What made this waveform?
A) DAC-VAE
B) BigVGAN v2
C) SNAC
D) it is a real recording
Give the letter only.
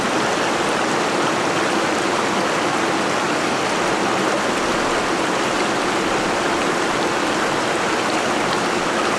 D